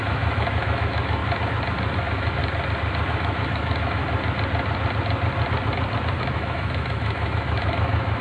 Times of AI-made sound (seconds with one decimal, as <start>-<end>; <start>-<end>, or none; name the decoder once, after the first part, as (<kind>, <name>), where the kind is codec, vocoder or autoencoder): 0.0-1.2 (autoencoder, DAC-VAE); 2.0-2.4; 3.1-4.0; 6.2-8.2